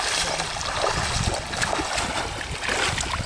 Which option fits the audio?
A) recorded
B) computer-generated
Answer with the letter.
A